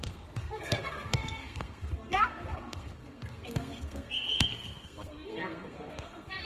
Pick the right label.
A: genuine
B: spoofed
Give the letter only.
B